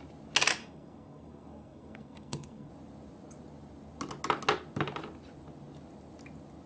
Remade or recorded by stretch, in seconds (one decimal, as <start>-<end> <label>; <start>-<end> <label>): 0.0-0.6 recorded; 0.6-2.7 remade; 2.7-6.7 recorded